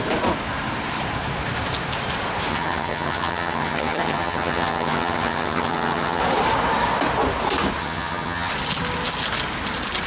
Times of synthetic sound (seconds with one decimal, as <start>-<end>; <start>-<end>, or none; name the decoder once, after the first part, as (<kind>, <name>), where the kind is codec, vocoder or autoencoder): 2.5-6.2 (vocoder, HiFi-GAN); 7.8-8.5